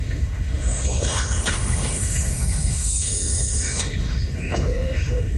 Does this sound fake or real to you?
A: fake